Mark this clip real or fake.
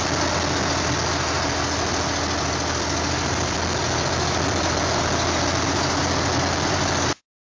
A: real